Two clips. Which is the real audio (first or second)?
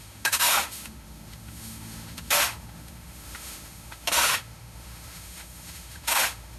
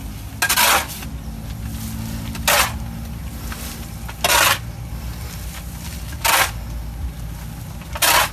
second